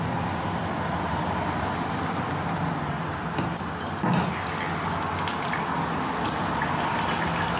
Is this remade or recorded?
recorded